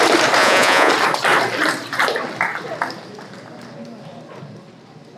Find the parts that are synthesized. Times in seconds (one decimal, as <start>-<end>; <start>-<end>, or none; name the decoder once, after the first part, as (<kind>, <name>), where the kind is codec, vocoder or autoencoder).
0.4-0.9 (vocoder, Vocos)